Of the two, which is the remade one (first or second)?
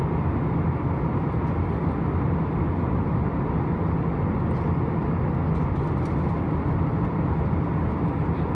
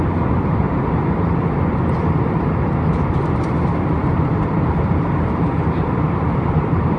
second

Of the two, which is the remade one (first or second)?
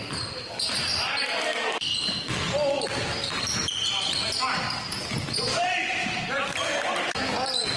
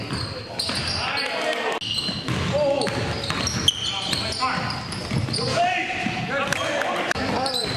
first